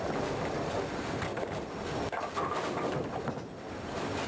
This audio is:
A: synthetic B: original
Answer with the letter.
B